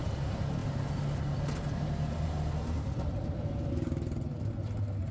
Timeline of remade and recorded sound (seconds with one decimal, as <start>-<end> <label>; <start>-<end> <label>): 0.0-5.1 recorded